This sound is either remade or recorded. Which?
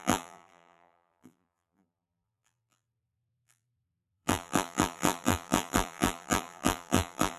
remade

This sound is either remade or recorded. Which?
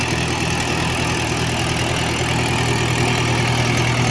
recorded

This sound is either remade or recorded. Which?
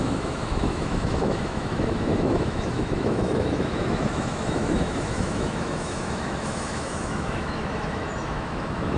remade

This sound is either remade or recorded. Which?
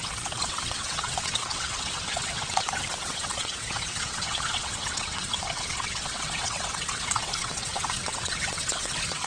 remade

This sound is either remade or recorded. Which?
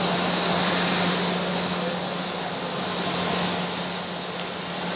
recorded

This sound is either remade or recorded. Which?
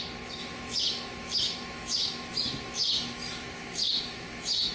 remade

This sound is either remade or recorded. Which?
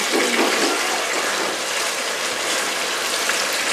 recorded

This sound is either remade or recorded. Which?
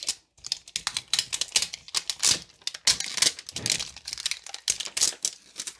recorded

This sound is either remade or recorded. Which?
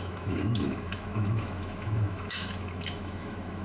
remade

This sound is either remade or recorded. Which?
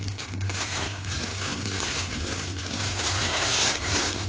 remade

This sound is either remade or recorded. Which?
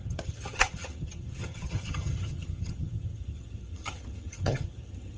remade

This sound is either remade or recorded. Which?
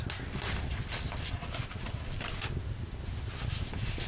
recorded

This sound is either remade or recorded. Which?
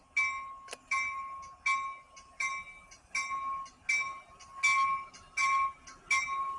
recorded